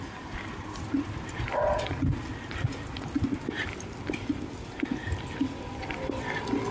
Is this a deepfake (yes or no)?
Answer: no